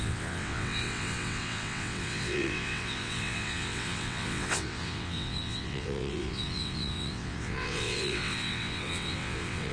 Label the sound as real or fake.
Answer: fake